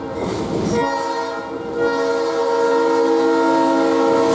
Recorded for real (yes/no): yes